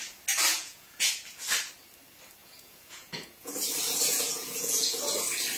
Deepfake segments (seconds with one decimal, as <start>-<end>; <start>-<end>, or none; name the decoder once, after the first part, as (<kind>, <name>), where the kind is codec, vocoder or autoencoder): 0.5-1.1 (vocoder, Vocos); 2.4-3.5; 4.1-5.0

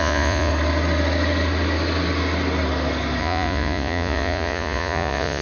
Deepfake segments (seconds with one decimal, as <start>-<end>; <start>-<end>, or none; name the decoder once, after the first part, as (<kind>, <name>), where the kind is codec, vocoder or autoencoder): 0.0-0.5 (vocoder, Vocos); 3.2-5.4

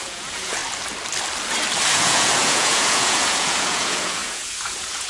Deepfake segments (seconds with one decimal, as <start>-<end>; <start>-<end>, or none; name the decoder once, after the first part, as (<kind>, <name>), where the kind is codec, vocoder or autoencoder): 0.0-0.6 (vocoder, Vocos); 1.9-5.1